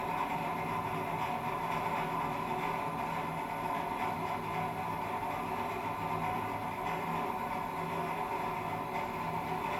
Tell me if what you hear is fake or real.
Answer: real